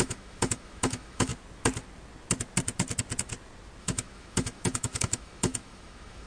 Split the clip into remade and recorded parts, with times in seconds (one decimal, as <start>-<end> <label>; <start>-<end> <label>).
0.0-1.3 remade; 1.3-3.8 recorded; 3.8-6.3 remade